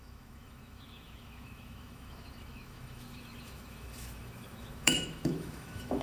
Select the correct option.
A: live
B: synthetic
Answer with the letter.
B